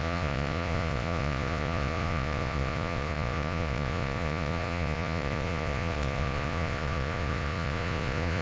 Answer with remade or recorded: remade